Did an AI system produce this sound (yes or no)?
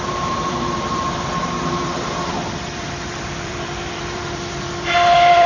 yes